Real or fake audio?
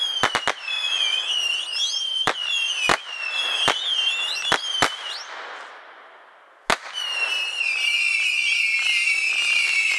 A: real